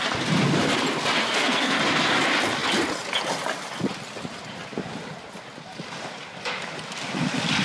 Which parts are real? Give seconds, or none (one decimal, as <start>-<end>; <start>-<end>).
0.0-1.2; 1.8-7.6